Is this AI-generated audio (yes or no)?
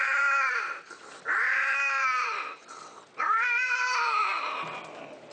yes